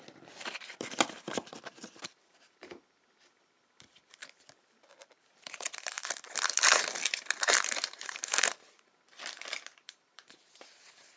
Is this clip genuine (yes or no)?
no